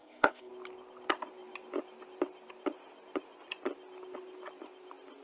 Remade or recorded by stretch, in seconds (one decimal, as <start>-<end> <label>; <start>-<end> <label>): 0.0-0.5 remade; 0.5-5.2 recorded